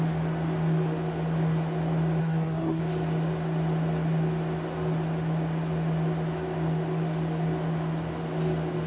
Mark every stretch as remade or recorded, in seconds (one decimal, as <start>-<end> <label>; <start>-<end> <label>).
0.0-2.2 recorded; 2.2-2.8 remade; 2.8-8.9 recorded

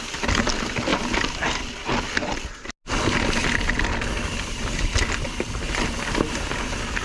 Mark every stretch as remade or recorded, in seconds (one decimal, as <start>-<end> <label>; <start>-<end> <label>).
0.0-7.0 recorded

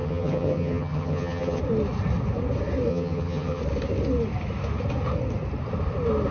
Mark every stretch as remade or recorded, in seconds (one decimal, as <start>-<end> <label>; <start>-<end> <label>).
0.0-1.6 remade; 1.6-2.9 recorded; 2.9-3.6 remade; 3.6-6.3 recorded